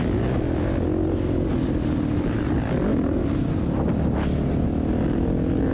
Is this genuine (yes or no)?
yes